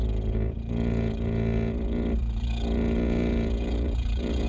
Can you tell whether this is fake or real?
fake